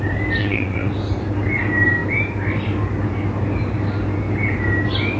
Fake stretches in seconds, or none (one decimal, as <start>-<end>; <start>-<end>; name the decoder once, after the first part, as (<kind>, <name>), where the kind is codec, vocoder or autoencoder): 0.4-0.9 (vocoder, WaveNeXt)